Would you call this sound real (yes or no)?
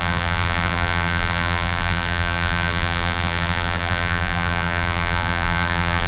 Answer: no